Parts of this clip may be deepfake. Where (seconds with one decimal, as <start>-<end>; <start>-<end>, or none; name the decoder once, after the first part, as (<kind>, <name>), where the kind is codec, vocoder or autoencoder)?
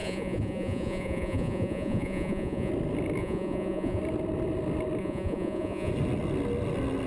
0.0-2.7 (vocoder, Vocos); 3.2-4.0; 5.0-5.9